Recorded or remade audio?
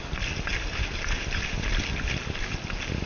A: recorded